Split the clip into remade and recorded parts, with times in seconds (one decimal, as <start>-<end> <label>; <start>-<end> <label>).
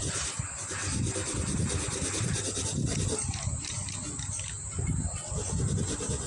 0.0-6.3 recorded